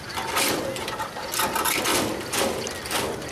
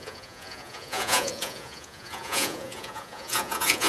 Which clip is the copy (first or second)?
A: second